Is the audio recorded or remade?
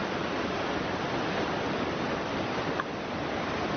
recorded